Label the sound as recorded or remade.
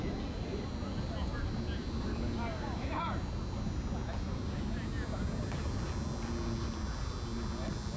recorded